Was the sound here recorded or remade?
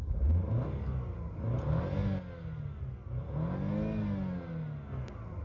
recorded